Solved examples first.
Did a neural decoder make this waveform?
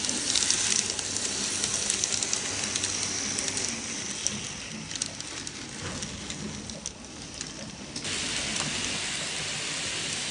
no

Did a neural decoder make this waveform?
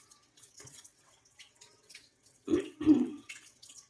yes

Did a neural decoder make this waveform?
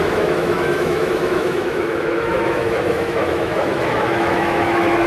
yes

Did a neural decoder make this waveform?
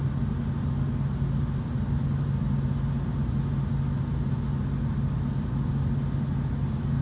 no